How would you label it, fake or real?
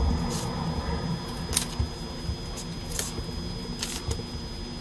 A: real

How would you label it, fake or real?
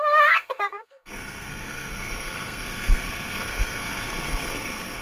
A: fake